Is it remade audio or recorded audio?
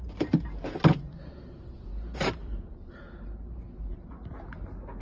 recorded